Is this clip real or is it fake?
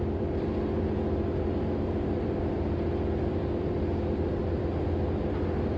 fake